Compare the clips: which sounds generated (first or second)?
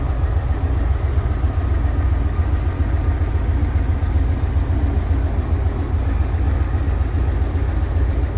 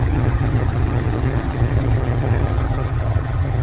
second